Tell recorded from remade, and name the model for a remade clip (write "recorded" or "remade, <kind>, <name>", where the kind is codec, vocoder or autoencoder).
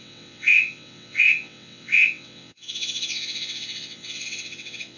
remade, vocoder, WaveNeXt